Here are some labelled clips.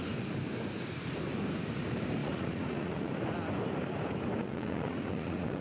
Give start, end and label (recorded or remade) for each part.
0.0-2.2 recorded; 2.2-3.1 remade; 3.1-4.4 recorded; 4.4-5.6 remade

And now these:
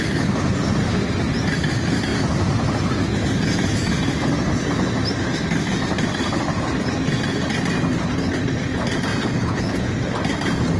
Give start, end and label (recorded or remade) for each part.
0.0-9.1 recorded; 9.1-9.9 remade; 9.9-10.8 recorded